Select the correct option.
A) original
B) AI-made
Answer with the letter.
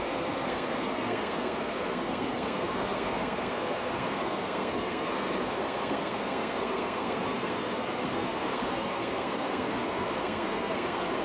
B